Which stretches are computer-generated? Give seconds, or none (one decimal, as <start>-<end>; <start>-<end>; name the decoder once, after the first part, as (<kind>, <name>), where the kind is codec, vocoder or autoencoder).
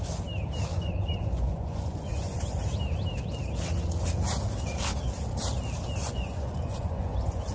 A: 0.7-2.4 (vocoder, Vocos); 6.0-7.5